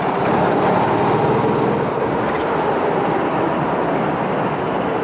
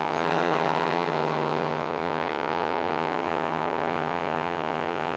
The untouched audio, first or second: first